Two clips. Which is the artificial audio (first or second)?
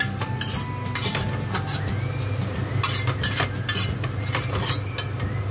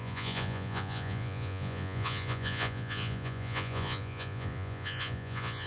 second